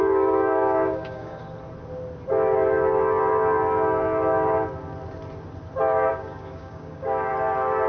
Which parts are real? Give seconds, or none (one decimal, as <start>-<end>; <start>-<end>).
1.4-6.1; 7.3-7.9

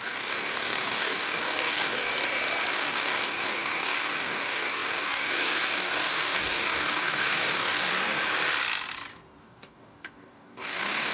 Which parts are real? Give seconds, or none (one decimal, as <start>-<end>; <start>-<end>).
2.1-2.7; 7.9-9.4